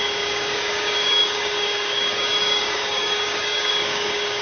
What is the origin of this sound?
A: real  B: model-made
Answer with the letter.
B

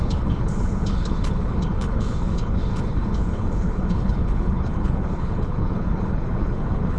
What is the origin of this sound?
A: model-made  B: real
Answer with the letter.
A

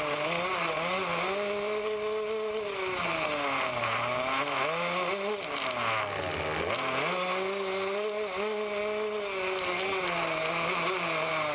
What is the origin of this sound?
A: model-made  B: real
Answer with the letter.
B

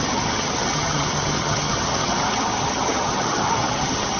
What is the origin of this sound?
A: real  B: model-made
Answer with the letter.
B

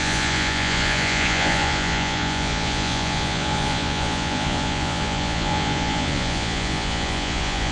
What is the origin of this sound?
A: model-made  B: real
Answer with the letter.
A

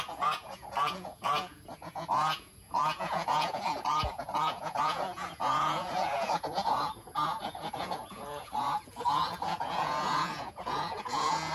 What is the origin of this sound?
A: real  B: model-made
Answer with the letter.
B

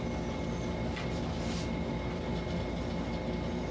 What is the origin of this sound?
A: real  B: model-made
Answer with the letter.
A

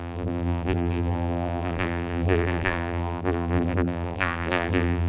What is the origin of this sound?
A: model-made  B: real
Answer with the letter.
A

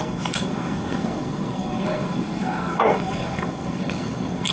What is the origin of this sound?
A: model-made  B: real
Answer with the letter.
A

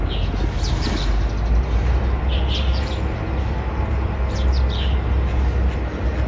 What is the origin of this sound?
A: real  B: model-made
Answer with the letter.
A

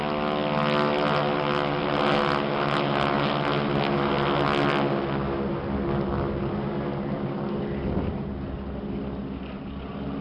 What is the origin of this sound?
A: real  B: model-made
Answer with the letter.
A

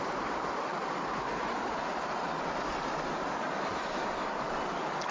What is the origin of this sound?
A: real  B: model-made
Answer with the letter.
A